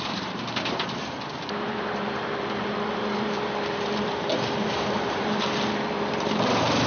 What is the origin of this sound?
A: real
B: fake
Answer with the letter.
B